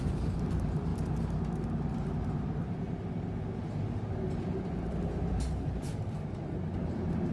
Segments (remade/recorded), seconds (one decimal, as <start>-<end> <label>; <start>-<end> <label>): 0.0-0.9 remade; 0.9-5.3 recorded; 5.3-7.3 remade